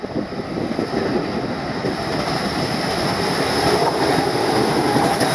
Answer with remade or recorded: recorded